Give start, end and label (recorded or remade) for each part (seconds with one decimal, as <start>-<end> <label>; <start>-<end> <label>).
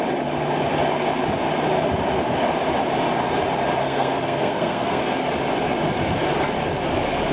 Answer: 0.0-3.8 recorded; 3.8-5.0 remade; 5.0-7.3 recorded